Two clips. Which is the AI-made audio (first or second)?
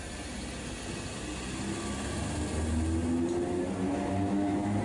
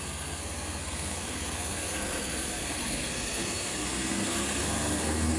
second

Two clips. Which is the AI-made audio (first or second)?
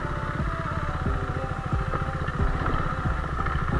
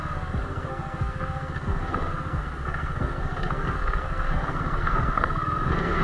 second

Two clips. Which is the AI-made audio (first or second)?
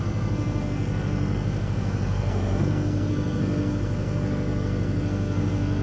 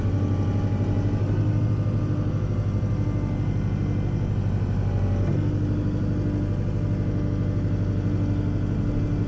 first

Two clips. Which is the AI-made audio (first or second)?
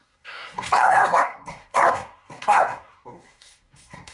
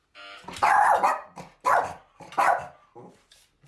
first